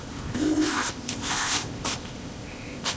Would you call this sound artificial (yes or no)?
yes